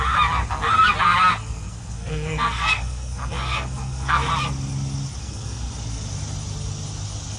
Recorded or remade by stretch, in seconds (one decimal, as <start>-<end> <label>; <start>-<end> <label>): 0.0-1.3 recorded; 1.3-4.3 remade; 4.3-5.2 recorded; 5.2-5.7 remade; 5.7-7.4 recorded